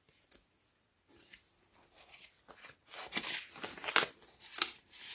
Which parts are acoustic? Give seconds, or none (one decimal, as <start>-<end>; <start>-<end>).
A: 0.0-5.1